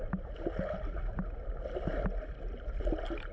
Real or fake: real